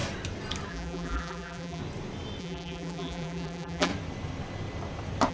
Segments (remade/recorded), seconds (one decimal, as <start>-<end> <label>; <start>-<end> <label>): 0.0-0.7 recorded; 0.7-1.8 remade; 1.8-2.4 recorded; 2.4-3.9 remade; 3.9-5.3 recorded